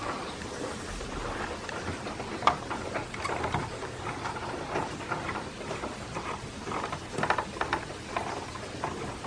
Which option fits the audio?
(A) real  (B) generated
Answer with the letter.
A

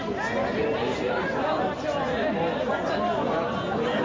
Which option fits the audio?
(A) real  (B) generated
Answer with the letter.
A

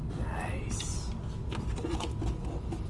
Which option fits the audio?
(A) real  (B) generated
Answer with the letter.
A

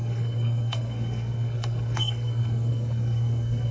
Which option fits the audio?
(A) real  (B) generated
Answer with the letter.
B